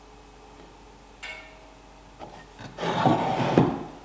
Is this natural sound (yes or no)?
yes